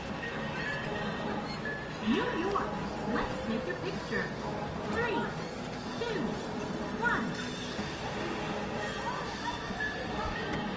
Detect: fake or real real